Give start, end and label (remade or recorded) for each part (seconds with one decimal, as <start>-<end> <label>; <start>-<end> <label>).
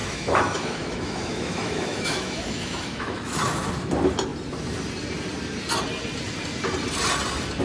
0.0-3.7 remade; 3.7-7.6 recorded